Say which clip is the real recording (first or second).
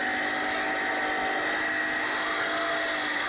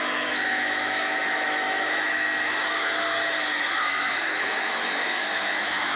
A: first